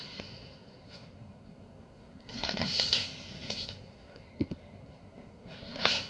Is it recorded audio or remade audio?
remade